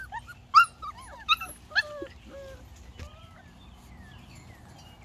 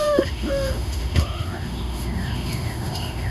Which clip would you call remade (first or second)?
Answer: second